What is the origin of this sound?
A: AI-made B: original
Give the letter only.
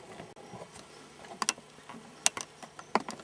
B